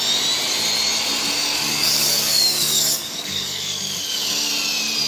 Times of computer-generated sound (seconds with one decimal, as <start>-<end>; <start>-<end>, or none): 1.4-4.5